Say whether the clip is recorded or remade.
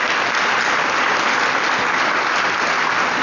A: recorded